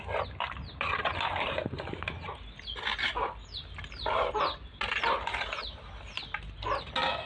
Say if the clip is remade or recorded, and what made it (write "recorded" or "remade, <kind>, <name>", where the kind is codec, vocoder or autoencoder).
recorded